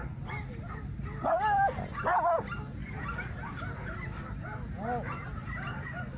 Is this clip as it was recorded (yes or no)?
yes